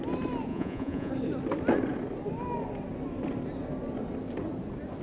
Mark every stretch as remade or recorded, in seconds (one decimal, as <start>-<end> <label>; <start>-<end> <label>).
0.0-0.5 recorded; 0.5-1.1 remade; 1.1-5.0 recorded